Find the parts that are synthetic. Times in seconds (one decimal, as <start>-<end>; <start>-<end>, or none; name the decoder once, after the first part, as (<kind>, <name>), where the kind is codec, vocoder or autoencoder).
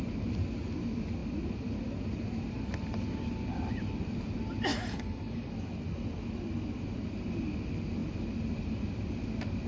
4.7-5.5 (codec, DAC)